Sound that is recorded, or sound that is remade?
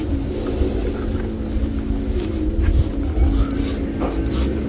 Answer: recorded